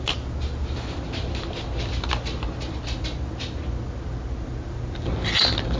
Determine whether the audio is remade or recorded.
recorded